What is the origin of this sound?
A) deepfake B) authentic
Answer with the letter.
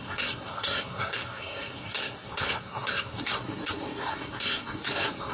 A